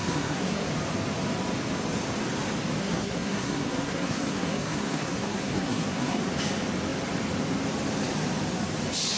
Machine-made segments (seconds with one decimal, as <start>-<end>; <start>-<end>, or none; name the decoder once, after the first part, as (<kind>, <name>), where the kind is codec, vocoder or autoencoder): 0.0-0.7 (codec, SNAC); 2.8-6.2